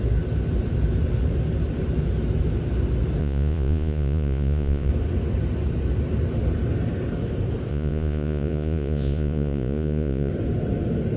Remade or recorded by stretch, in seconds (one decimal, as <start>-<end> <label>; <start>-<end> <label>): 0.0-3.2 recorded; 3.2-4.9 remade; 4.9-7.7 recorded; 7.7-10.3 remade; 10.3-11.2 recorded